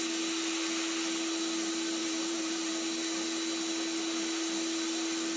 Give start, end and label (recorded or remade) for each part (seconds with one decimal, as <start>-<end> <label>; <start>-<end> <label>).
0.0-2.0 recorded; 2.0-2.7 remade; 2.7-5.4 recorded